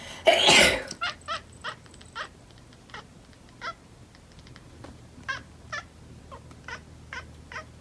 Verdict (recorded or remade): recorded